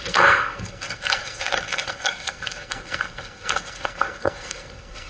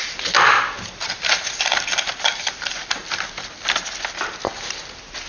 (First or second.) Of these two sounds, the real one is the second